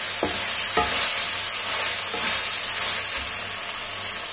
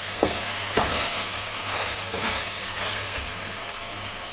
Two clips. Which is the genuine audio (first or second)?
first